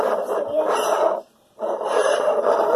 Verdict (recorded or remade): remade